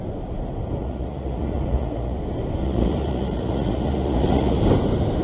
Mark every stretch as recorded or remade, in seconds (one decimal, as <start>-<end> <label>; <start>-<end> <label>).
0.0-0.8 recorded; 0.8-2.2 remade; 2.2-2.6 recorded; 2.6-4.6 remade; 4.6-5.2 recorded